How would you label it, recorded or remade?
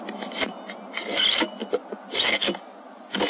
recorded